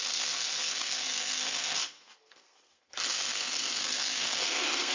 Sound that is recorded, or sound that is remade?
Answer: remade